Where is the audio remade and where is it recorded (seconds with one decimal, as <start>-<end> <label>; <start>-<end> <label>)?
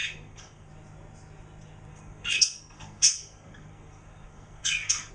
0.0-0.7 remade; 0.7-1.9 recorded; 1.9-5.1 remade